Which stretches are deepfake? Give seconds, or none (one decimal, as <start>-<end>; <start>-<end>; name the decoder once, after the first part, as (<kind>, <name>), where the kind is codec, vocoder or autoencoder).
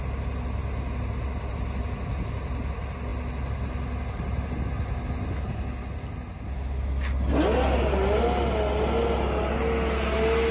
none